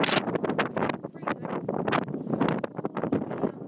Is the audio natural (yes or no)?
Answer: yes